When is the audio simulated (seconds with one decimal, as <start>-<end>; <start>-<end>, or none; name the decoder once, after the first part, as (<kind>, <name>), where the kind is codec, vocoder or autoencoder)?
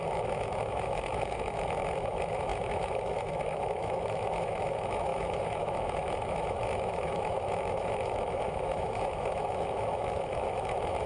0.0-11.1 (autoencoder, DAC-VAE)